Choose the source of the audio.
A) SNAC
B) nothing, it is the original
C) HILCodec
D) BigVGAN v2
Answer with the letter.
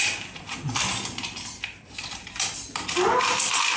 D